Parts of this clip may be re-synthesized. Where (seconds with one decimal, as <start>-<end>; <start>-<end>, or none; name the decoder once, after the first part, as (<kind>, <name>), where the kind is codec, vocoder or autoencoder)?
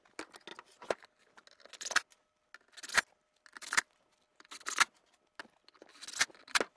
none